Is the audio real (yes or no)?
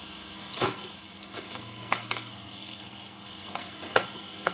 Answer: no